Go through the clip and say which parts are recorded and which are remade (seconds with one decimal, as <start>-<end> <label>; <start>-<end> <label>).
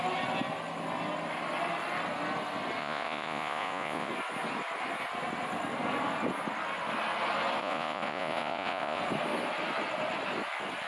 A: 0.0-2.8 recorded; 2.8-4.1 remade; 4.1-7.6 recorded; 7.6-9.0 remade; 9.0-10.9 recorded